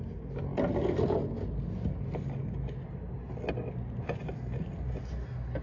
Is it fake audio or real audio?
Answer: real